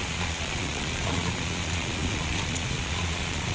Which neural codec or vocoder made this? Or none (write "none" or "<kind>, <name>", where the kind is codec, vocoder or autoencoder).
vocoder, Vocos